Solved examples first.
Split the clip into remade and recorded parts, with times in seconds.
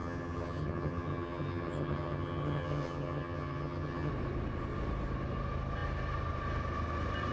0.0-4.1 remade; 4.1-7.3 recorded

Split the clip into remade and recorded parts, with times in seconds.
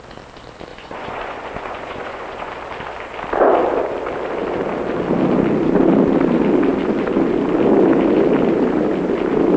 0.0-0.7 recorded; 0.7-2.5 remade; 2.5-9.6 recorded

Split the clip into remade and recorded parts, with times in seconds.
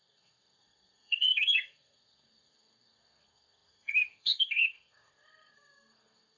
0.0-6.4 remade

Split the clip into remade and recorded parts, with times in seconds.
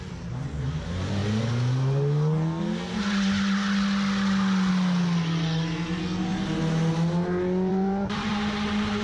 0.0-7.7 recorded; 7.7-8.3 remade; 8.3-9.0 recorded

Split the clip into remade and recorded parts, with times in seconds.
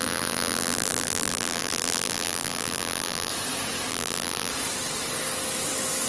0.0-3.3 remade; 3.3-3.9 recorded; 3.9-4.5 remade; 4.5-6.1 recorded